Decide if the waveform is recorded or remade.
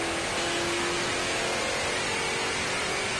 recorded